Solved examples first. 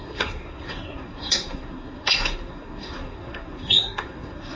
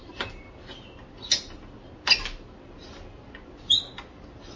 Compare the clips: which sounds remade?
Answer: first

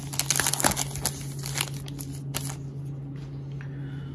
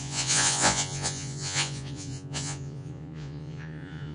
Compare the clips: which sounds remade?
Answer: second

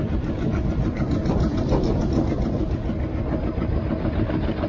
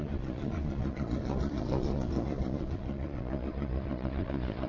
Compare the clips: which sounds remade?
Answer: second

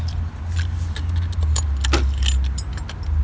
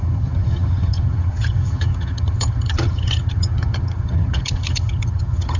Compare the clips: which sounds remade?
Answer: second